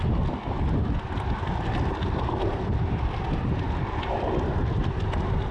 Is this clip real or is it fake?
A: real